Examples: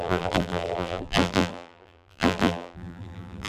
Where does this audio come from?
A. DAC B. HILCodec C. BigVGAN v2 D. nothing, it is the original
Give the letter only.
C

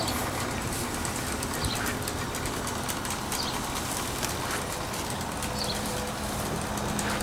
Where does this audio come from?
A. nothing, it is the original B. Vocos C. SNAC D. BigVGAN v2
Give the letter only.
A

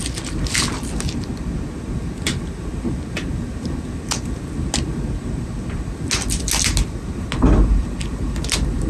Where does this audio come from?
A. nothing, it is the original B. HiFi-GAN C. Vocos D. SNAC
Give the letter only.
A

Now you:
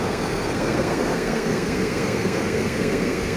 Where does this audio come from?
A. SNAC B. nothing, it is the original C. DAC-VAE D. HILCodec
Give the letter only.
A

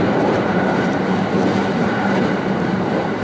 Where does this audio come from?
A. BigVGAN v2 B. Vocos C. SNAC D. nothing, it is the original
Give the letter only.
A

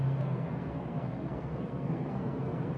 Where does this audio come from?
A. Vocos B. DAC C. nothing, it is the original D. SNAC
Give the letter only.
D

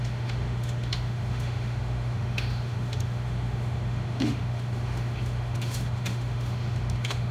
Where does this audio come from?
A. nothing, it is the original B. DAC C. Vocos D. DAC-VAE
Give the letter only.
D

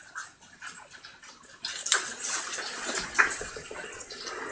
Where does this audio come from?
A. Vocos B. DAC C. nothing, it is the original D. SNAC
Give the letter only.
C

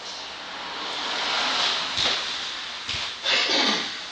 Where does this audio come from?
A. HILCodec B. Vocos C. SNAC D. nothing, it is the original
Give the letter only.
D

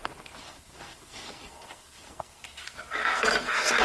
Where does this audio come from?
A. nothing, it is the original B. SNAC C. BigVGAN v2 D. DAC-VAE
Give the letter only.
B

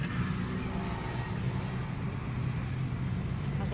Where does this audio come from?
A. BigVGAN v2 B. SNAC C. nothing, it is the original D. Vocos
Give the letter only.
C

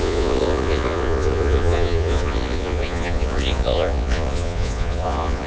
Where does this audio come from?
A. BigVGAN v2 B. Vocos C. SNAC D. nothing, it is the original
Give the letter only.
B